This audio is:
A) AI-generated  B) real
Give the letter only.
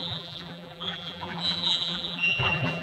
A